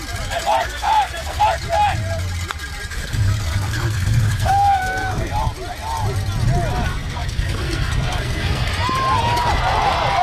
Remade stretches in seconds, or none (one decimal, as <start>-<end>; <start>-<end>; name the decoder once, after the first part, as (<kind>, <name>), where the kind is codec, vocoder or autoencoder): 0.6-1.4 (codec, SNAC); 2.9-5.3; 6.9-8.7